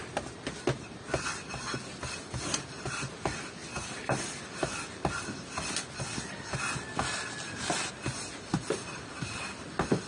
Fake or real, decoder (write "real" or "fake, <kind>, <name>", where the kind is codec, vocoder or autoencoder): real